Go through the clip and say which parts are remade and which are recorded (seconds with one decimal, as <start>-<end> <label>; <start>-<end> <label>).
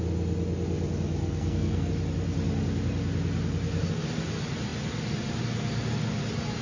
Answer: 0.0-1.2 recorded; 1.2-1.9 remade; 1.9-6.6 recorded